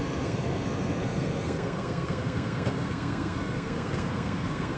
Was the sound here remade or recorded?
remade